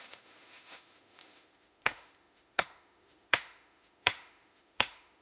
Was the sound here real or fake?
fake